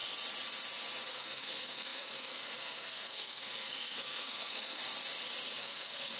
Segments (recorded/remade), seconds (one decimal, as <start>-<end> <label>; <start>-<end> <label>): 0.0-1.1 recorded; 1.1-4.8 remade; 4.8-5.6 recorded; 5.6-6.2 remade